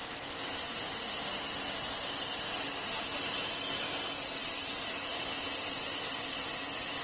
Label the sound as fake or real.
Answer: real